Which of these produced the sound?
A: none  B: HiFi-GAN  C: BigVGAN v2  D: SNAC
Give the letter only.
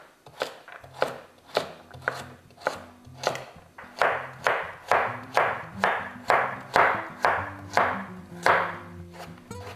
A